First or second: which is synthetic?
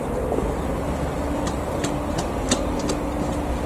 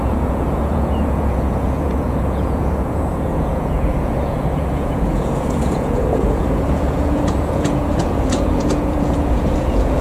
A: second